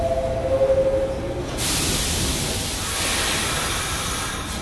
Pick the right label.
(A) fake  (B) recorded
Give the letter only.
B